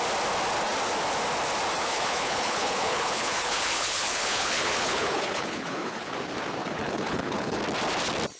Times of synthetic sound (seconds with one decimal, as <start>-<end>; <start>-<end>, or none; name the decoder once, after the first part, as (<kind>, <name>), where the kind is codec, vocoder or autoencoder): 1.8-6.1 (codec, HILCodec); 6.6-7.6